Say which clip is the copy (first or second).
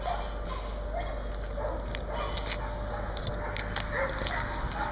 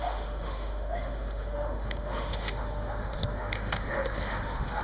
second